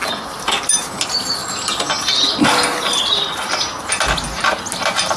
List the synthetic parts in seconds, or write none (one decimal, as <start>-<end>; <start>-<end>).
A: none